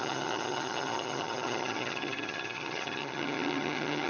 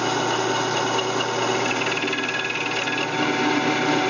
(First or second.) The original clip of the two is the second